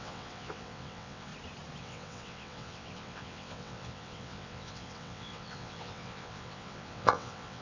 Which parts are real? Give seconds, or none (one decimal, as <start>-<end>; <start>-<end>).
1.3-1.8